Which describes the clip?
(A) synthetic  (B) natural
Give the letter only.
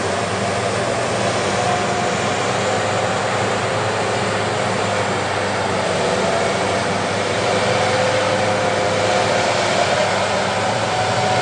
B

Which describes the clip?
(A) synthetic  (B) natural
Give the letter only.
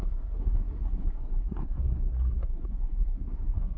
A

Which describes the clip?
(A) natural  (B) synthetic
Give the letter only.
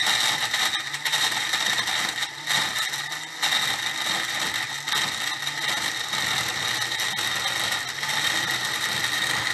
A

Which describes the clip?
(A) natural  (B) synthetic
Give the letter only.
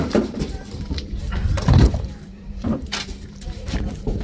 B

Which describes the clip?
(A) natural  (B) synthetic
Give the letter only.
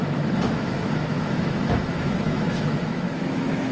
B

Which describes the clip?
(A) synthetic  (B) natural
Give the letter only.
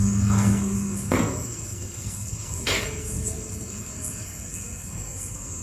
A